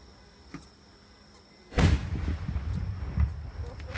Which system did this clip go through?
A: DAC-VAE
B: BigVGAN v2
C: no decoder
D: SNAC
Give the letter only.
C